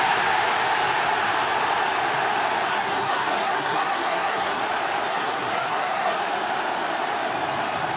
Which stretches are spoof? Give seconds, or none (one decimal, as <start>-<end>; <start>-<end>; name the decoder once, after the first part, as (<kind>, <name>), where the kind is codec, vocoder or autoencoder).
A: 2.7-4.6 (codec, SNAC); 5.1-6.2

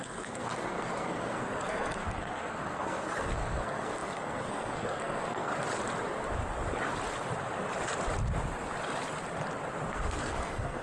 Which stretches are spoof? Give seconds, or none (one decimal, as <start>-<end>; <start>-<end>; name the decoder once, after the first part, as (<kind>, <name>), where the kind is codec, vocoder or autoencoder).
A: 0.0-5.5 (codec, SNAC); 9.9-10.8